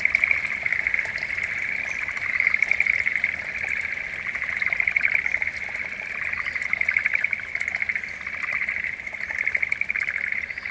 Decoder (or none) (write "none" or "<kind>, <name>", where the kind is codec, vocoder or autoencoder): none